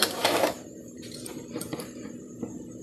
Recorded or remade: remade